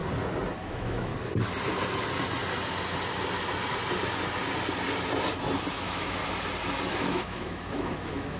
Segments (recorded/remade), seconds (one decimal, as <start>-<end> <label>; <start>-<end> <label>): 0.0-0.6 recorded; 0.6-1.1 remade; 1.1-5.7 recorded; 5.7-6.2 remade; 6.2-6.9 recorded; 6.9-8.4 remade